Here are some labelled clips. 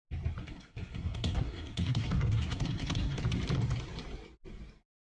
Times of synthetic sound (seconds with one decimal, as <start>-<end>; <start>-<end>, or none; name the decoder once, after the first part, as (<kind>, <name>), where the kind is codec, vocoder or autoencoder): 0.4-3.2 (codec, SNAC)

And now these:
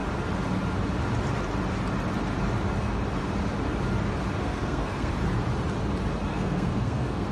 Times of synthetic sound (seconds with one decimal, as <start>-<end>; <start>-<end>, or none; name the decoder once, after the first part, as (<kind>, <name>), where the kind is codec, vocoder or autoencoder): 4.4-5.1 (codec, SNAC); 6.3-7.3

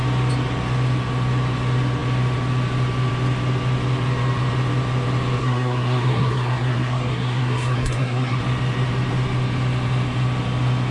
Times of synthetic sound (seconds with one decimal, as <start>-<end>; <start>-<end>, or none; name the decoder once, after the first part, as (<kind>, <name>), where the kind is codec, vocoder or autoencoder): 5.4-8.4 (codec, SNAC)

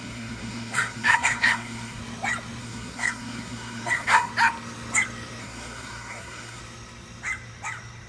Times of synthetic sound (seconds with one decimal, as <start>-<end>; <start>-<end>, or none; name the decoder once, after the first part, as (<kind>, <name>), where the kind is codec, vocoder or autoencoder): 0.0-2.0 (codec, SNAC); 2.6-4.3; 5.4-6.6

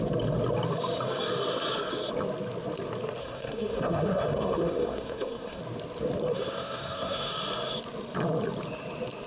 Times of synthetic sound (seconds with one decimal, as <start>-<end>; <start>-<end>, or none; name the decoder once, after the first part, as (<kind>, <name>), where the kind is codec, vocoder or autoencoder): 3.2-5.6 (codec, SNAC); 6.3-7.3

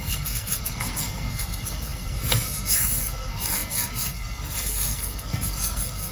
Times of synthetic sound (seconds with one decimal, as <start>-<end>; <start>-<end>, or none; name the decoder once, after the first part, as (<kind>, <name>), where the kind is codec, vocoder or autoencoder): 0.0-6.1 (codec, SNAC)

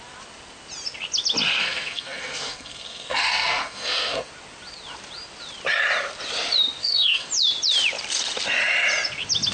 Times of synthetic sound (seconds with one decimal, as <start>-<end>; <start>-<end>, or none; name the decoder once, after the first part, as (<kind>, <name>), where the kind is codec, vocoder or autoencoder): 1.6-4.3 (codec, SNAC); 6.8-7.3

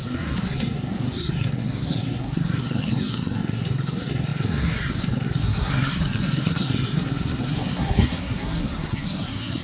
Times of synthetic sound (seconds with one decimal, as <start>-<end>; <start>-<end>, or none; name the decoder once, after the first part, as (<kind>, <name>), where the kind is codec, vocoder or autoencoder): 0.0-9.6 (codec, SNAC)